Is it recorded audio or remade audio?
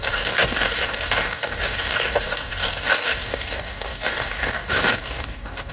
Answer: remade